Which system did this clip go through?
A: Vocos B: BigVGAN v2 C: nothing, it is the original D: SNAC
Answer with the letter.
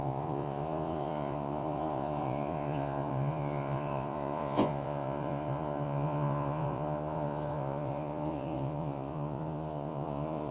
A